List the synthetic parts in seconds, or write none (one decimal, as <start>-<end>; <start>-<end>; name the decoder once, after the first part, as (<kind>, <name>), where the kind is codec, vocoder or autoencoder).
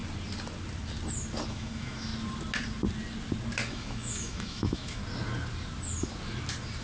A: 1.5-2.1 (autoencoder, DAC-VAE); 3.7-5.0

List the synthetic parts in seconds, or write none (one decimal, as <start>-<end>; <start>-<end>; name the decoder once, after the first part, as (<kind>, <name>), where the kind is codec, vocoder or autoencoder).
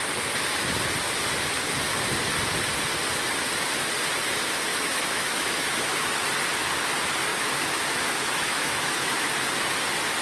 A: 4.7-6.2 (autoencoder, DAC-VAE); 7.3-9.3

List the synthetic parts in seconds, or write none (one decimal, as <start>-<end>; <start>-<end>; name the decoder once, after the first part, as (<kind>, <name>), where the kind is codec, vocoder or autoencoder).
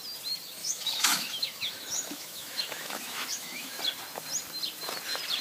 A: 0.6-3.8 (autoencoder, DAC-VAE)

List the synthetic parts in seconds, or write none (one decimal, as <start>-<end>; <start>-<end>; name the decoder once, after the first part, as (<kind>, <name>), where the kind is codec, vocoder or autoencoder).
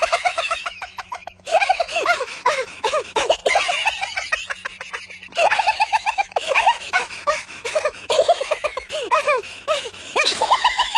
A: 0.0-3.4 (autoencoder, DAC-VAE); 5.6-11.0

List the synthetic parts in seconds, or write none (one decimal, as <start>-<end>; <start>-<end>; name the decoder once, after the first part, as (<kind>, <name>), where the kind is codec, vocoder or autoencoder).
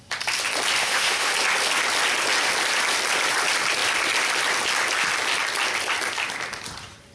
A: 0.8-1.3 (autoencoder, DAC-VAE)